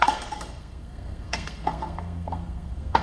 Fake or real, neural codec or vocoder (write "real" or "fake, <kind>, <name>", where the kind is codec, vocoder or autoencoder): fake, codec, SNAC